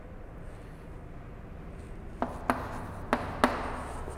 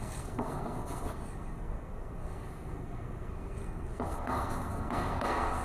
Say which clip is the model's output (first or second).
second